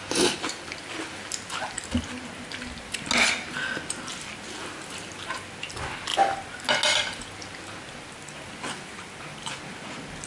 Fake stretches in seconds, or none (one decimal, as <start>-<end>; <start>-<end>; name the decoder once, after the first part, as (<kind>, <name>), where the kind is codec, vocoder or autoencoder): none